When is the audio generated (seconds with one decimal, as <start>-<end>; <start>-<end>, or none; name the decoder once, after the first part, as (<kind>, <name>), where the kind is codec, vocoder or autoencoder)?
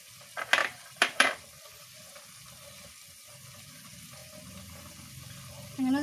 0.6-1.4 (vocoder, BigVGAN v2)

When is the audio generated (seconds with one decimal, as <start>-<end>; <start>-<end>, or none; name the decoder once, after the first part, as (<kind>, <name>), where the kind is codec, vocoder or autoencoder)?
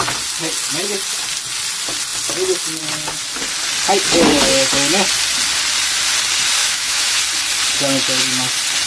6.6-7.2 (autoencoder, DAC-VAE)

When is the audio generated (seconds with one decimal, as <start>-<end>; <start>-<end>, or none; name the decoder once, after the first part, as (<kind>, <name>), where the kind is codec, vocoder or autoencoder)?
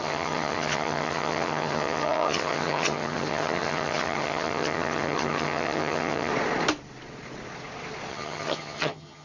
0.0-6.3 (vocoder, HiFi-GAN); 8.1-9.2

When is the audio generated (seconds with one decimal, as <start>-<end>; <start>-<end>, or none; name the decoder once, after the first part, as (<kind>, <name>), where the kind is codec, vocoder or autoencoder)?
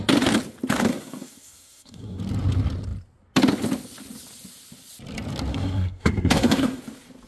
0.9-2.2 (codec, SNAC); 5.5-6.8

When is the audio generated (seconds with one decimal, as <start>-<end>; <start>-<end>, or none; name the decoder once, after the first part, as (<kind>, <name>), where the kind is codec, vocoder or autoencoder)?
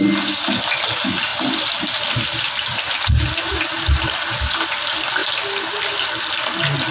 none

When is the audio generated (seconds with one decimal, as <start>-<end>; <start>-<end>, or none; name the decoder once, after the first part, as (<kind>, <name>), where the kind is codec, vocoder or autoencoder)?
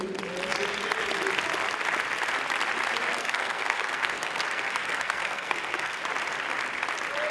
3.2-6.0 (codec, SNAC)